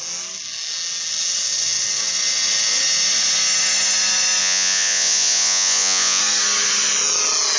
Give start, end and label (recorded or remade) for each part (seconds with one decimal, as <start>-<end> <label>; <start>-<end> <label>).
0.0-4.4 recorded; 4.4-6.2 remade; 6.2-7.6 recorded